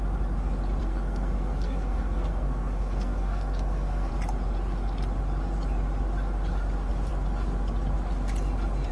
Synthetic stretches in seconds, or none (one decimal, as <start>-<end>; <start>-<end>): 0.8-4.1